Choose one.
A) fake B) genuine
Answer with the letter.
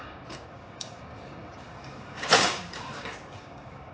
A